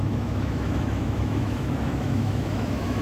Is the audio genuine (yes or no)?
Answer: no